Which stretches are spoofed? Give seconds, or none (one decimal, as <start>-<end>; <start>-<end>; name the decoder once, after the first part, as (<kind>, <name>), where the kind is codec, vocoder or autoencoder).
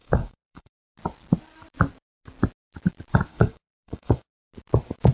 0.0-0.7 (codec, DAC); 3.3-4.3